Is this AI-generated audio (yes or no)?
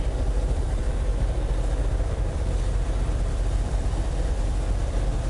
yes